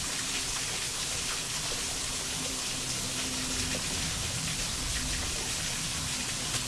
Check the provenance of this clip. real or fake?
real